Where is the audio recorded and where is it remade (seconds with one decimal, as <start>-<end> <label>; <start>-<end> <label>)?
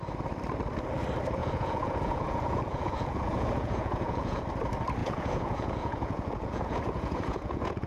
0.0-1.4 recorded; 1.4-4.4 remade; 4.4-5.0 recorded; 5.0-7.9 remade